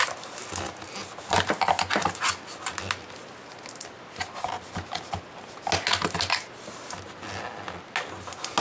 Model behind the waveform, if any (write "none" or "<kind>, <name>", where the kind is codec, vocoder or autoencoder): none